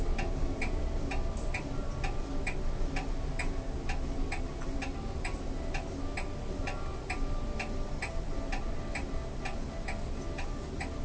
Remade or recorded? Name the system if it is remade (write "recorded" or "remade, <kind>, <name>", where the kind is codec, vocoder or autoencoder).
recorded